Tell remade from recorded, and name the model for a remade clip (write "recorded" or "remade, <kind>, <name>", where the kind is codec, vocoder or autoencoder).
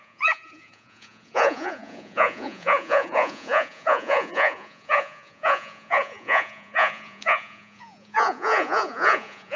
remade, vocoder, Vocos